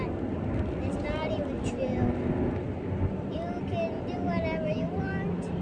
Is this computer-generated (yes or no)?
no